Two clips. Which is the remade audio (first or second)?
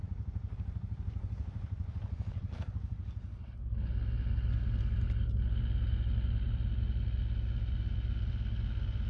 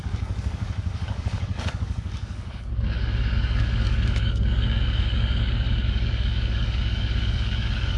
second